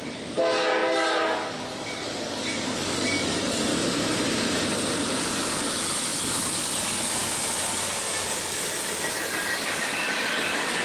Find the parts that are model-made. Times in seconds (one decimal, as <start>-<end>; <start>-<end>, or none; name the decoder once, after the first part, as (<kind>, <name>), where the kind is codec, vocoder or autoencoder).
0.0-3.7 (codec, DAC); 5.2-10.8